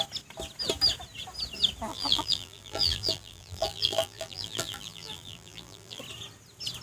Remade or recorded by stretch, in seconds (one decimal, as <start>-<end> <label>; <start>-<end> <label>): 0.0-1.9 recorded; 1.9-6.0 remade; 6.0-6.8 recorded